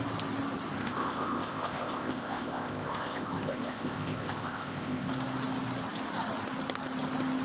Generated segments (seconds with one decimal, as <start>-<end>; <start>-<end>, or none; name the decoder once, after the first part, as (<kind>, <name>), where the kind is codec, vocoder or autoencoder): 0.8-5.1 (codec, ZipCodec)